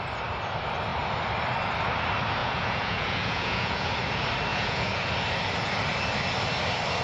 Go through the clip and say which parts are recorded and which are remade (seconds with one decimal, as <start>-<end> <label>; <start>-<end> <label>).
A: 0.0-2.4 recorded; 2.4-3.9 remade; 3.9-4.5 recorded; 4.5-5.1 remade; 5.1-7.0 recorded